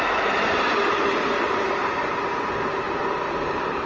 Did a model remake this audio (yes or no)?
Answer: no